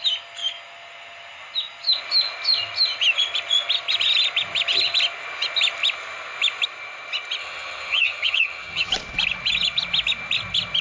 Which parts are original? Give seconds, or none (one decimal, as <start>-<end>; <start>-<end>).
0.0-7.4; 8.9-10.8